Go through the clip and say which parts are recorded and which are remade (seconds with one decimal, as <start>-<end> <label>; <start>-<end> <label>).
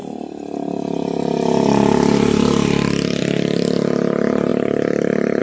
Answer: 0.0-5.4 recorded